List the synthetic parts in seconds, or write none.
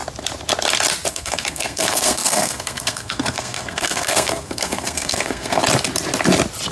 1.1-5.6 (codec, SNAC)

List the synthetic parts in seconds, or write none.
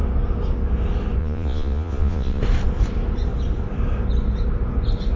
1.2-2.4 (vocoder, Vocos)